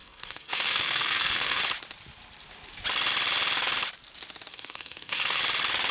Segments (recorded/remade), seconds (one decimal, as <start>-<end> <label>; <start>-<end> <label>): 0.0-1.6 remade; 1.6-4.5 recorded; 4.5-5.4 remade; 5.4-5.9 recorded